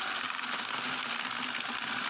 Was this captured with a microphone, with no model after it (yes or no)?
yes